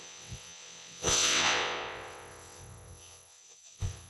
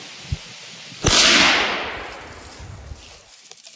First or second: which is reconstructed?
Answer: first